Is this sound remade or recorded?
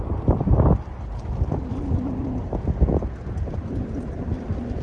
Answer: recorded